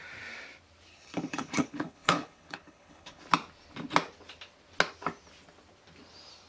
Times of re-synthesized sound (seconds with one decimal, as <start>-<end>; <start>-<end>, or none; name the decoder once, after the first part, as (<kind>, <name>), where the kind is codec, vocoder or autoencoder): 0.9-3.2 (codec, HILCodec)